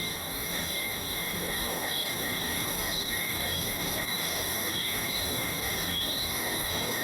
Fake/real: fake